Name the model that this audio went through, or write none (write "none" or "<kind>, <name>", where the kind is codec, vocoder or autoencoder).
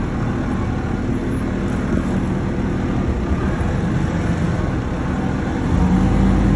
none